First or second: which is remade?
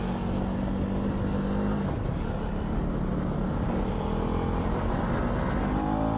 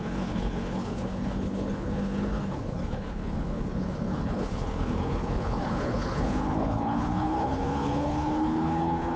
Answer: second